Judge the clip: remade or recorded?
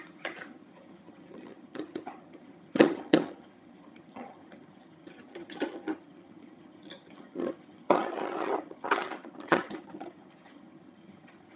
remade